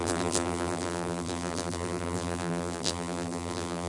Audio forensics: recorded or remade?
remade